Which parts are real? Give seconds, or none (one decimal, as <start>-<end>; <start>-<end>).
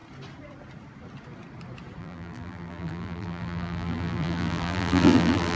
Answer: 0.0-2.0